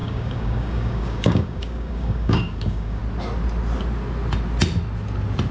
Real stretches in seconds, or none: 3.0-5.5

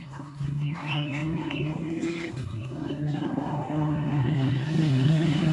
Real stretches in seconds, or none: none

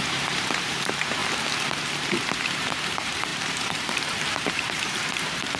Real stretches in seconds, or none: 1.2-2.4

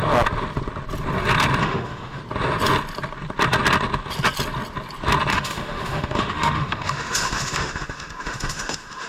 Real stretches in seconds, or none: 0.0-1.6; 2.2-5.3

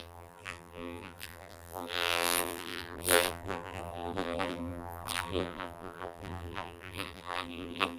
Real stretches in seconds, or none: none

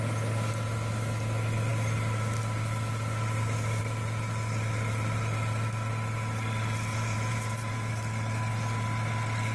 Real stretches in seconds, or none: 0.0-6.9; 7.9-9.5

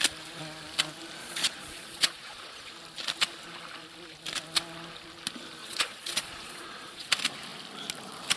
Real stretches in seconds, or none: 0.0-1.2; 2.7-5.6; 7.1-8.4